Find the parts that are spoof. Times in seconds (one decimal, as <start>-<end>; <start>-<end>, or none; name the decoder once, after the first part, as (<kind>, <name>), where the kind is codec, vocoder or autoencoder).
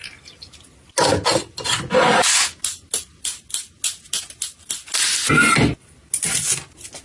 none